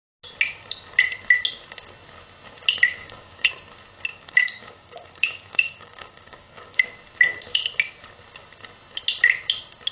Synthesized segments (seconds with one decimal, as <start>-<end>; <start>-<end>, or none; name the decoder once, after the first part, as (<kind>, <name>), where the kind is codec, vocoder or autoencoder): 3.0-3.5 (codec, DAC); 4.1-6.8